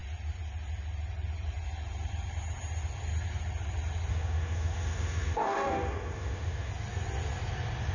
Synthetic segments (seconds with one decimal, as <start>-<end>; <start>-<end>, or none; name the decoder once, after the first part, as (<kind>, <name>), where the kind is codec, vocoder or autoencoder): 4.1-6.7 (autoencoder, DAC-VAE)